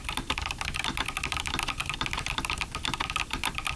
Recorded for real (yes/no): yes